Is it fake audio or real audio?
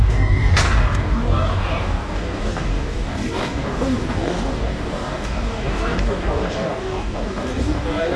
fake